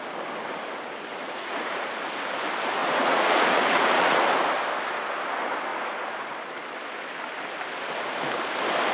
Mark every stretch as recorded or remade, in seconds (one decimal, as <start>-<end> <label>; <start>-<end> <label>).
0.0-1.1 recorded; 1.1-2.0 remade; 2.0-2.8 recorded; 2.8-4.2 remade; 4.2-5.7 recorded; 5.7-6.3 remade; 6.3-8.9 recorded